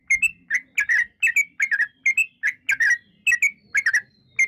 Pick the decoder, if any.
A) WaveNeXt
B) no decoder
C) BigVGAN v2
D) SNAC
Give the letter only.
B